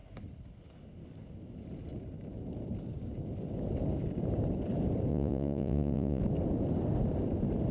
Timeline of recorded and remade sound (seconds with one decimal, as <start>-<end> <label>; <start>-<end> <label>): 0.0-5.1 recorded; 5.1-6.2 remade; 6.2-7.7 recorded